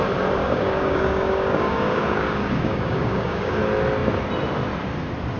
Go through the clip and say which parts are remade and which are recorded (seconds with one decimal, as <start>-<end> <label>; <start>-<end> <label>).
0.0-0.4 recorded; 0.4-3.6 remade; 3.6-5.4 recorded